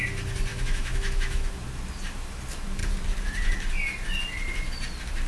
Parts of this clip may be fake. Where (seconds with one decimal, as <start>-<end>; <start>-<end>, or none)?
0.5-1.5